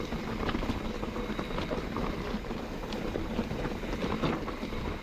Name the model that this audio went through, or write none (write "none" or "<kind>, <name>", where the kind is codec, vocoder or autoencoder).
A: none